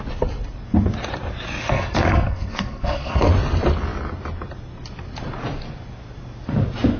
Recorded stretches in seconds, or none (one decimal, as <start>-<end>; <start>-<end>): 0.0-1.6; 3.3-7.0